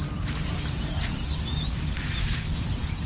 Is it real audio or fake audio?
real